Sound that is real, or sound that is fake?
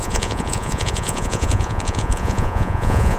fake